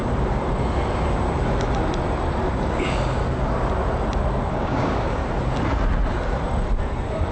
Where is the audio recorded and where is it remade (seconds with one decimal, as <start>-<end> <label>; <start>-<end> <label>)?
0.0-2.7 recorded; 2.7-3.2 remade; 3.2-4.5 recorded; 4.5-5.2 remade; 5.2-7.3 recorded